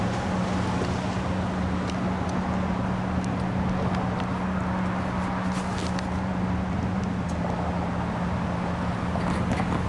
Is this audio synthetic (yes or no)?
no